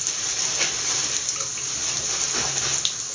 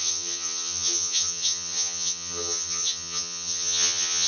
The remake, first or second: second